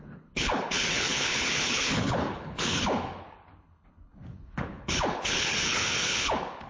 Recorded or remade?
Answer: remade